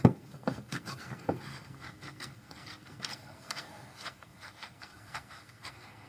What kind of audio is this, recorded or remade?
remade